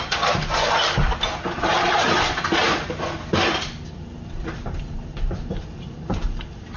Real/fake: fake